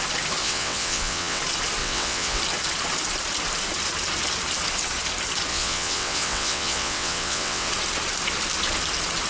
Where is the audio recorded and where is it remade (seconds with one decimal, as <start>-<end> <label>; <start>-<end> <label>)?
0.0-0.4 recorded; 0.4-1.4 remade; 1.4-1.8 recorded; 1.8-2.4 remade; 2.4-5.5 recorded; 5.5-7.7 remade; 7.7-9.3 recorded